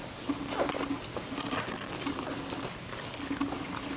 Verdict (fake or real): real